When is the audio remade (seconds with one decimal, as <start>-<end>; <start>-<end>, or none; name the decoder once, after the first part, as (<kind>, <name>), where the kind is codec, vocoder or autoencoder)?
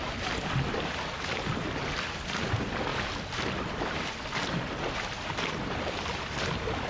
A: none